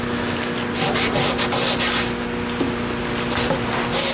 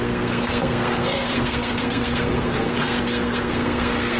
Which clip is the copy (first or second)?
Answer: second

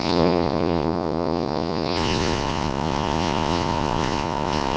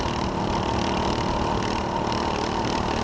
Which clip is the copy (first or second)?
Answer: first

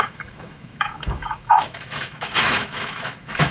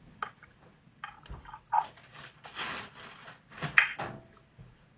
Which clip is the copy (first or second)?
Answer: first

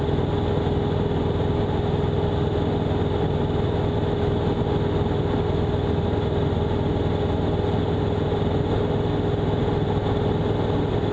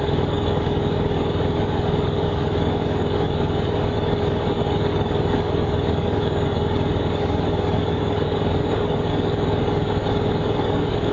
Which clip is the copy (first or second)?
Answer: second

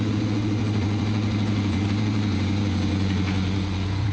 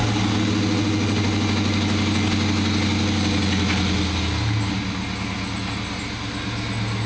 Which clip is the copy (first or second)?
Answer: first